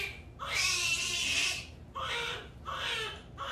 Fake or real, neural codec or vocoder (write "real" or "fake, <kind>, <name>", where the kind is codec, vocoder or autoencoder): real